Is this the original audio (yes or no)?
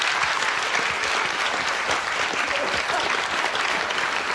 yes